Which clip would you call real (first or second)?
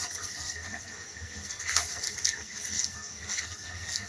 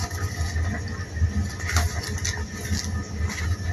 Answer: second